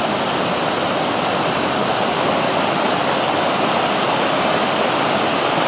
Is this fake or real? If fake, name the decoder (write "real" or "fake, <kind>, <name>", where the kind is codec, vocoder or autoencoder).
real